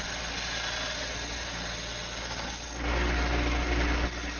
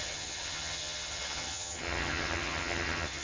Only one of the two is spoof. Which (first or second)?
second